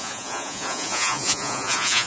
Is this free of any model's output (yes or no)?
no